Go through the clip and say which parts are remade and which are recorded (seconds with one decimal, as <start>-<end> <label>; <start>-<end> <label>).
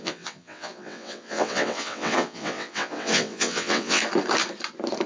0.0-4.0 remade; 4.0-5.1 recorded